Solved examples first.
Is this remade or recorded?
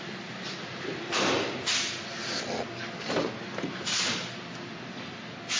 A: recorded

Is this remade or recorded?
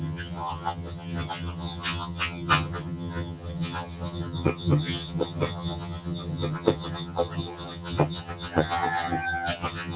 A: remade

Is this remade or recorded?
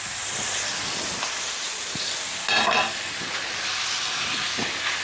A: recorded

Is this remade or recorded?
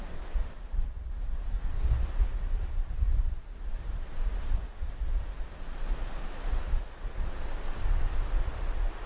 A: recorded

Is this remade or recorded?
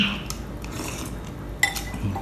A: recorded